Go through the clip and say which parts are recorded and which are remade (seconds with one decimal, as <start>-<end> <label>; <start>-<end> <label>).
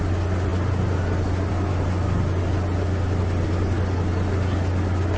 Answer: 0.0-5.2 recorded